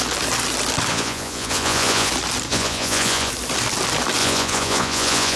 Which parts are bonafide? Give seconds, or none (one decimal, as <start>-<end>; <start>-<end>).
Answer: 0.0-0.9; 2.1-2.5; 3.3-4.2